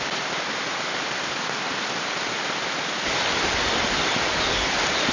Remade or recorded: recorded